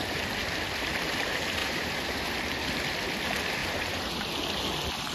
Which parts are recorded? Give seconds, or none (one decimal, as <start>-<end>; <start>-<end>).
0.0-1.6; 2.3-3.6; 4.3-5.1